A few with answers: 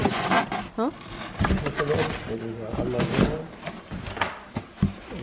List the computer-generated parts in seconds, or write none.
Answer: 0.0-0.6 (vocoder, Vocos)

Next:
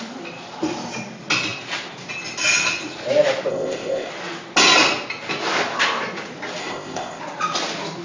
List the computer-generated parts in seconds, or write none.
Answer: 3.5-4.1 (codec, ZipCodec); 6.6-7.2

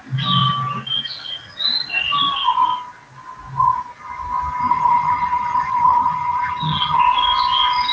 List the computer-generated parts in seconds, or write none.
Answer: 4.6-7.0 (vocoder, HiFi-GAN)

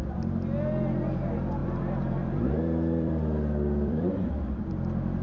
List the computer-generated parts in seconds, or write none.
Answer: 1.6-4.6 (vocoder, BigVGAN v2)

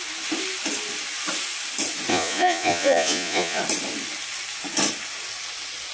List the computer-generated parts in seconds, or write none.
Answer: 2.1-3.6 (vocoder, Vocos)

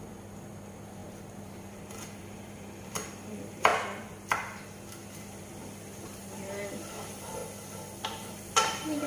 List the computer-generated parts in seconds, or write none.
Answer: 0.0-3.7 (vocoder, BigVGAN v2); 5.2-9.1

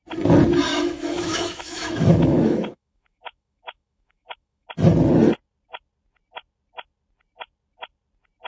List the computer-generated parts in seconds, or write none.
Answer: 0.7-4.7 (autoencoder, DAC-VAE)

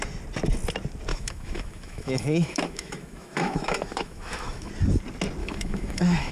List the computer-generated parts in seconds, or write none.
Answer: 1.1-4.7 (autoencoder, DAC-VAE); 5.4-6.3